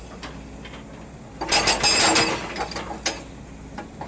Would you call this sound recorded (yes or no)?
yes